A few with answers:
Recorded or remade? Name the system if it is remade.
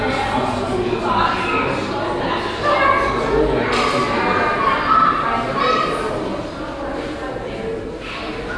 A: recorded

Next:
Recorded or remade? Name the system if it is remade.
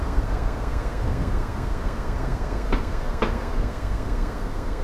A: remade, codec, SNAC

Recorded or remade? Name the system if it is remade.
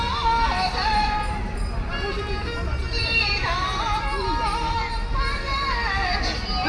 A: recorded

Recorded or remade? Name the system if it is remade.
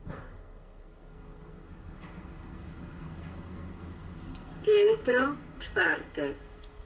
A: remade, codec, SNAC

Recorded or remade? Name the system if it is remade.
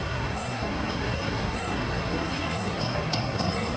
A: remade, codec, SNAC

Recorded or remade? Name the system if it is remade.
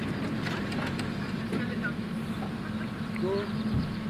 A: recorded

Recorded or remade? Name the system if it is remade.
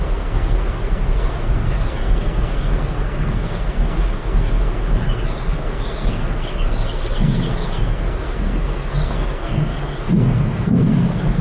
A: remade, codec, SNAC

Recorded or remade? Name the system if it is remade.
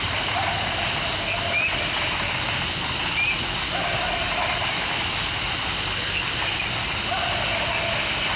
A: recorded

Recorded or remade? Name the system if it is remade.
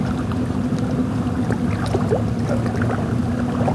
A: recorded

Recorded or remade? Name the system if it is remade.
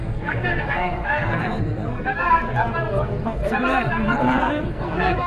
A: remade, codec, SNAC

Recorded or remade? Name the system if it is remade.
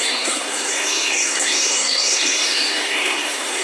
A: remade, codec, SNAC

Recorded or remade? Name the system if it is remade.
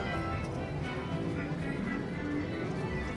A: recorded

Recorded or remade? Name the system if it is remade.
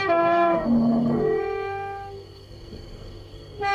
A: remade, codec, SNAC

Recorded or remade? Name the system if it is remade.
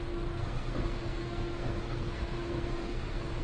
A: remade, codec, SNAC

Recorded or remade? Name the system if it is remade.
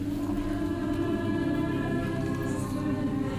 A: recorded